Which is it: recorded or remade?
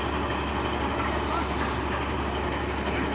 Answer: recorded